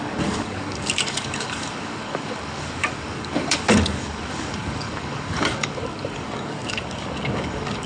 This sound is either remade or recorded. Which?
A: remade